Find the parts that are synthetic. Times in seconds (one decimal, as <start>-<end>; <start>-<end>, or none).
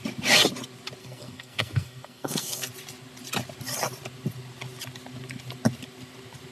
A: 1.0-2.7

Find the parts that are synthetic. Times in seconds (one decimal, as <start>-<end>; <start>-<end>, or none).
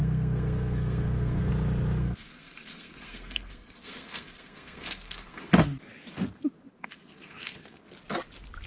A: 0.0-1.5; 2.0-5.5; 6.7-7.9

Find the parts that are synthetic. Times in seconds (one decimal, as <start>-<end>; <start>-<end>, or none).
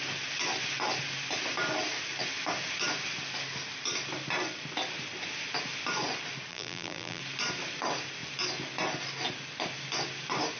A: 6.5-7.2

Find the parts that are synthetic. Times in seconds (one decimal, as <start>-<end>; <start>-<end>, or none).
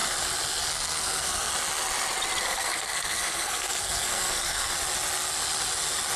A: 0.7-1.5; 2.4-4.7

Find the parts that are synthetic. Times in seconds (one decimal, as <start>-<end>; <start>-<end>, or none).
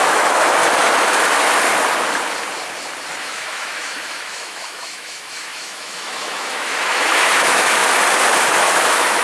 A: 0.0-0.6; 3.2-7.8; 8.5-9.2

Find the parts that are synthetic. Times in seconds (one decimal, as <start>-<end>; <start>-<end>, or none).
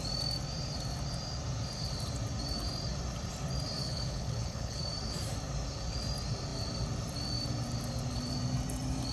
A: 3.8-4.8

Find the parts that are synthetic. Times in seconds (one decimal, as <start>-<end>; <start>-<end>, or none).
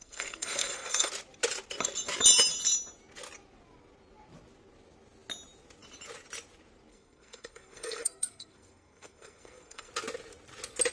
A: 0.0-1.1; 6.9-9.9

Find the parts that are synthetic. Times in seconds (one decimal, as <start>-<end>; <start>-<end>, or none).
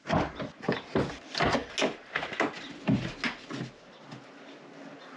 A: none